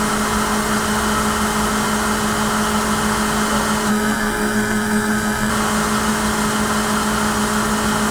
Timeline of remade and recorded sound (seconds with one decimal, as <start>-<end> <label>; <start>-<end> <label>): 0.0-3.9 recorded; 3.9-5.5 remade; 5.5-8.1 recorded